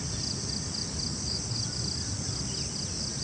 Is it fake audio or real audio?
real